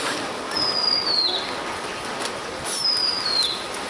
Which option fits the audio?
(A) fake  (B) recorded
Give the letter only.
B